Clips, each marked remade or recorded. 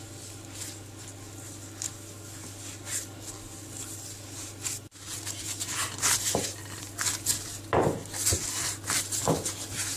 recorded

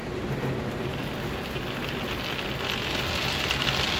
recorded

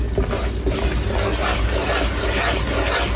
recorded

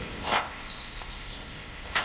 remade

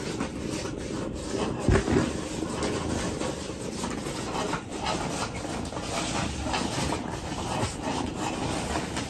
recorded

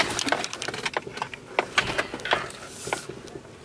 recorded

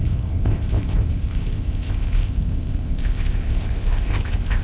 remade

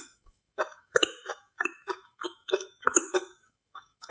remade